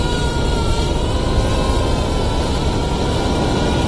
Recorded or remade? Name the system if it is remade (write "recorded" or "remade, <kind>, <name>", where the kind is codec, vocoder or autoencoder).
recorded